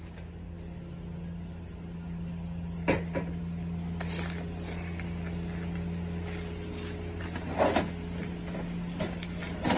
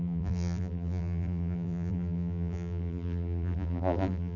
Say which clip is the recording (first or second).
first